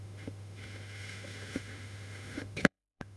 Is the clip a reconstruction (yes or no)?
yes